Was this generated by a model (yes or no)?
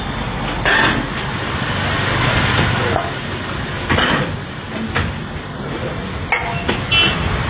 no